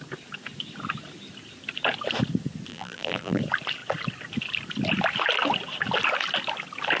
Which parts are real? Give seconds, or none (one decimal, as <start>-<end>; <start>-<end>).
0.0-2.7; 3.4-7.0